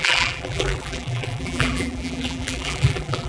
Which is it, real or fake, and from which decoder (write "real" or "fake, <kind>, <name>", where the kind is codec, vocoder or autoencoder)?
fake, vocoder, BigVGAN v2